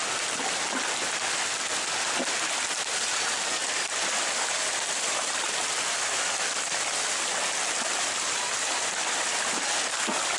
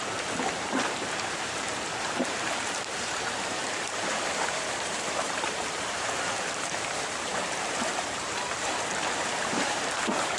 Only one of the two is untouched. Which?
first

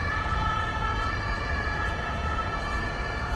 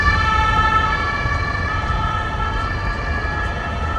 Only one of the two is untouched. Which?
second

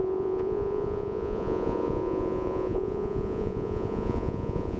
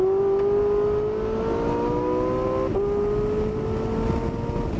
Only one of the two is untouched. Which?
second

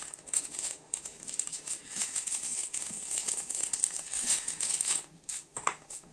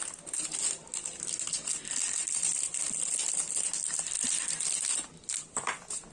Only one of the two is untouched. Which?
second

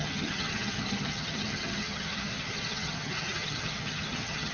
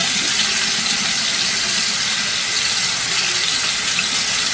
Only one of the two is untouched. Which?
second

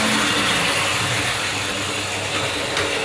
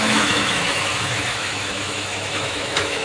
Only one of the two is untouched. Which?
first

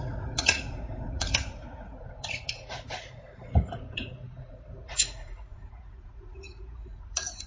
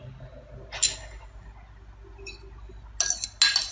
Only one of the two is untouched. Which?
second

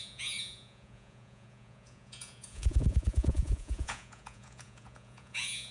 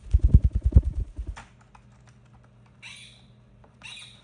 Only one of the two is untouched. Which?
second